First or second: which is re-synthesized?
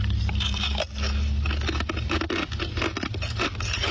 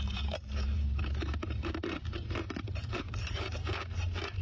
second